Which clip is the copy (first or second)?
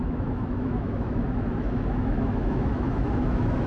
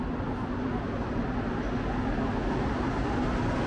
first